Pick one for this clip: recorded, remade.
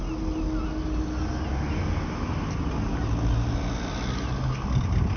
recorded